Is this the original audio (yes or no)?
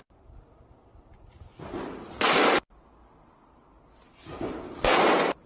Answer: yes